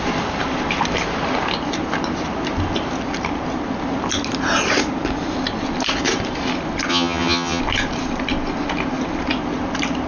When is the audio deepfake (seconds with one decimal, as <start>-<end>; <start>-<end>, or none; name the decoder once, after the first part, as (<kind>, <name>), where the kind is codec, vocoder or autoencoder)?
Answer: 6.9-7.6 (vocoder, HiFi-GAN)